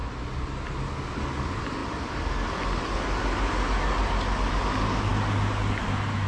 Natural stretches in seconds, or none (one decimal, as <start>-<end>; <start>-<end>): 0.0-6.3